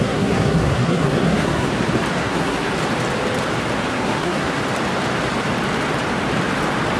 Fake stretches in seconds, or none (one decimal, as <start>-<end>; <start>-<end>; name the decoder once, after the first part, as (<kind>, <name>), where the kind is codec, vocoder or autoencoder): 0.0-1.7 (codec, SNAC); 2.2-2.7; 3.9-4.6